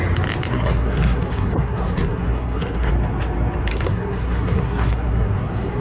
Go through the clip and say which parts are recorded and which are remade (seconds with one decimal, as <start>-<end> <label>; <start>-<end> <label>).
0.0-0.5 recorded; 0.5-2.9 remade; 2.9-3.7 recorded; 3.7-5.8 remade